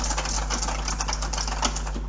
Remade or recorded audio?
recorded